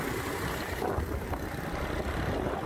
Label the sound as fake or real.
real